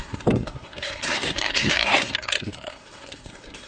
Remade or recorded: remade